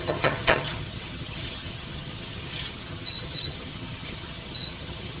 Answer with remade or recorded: remade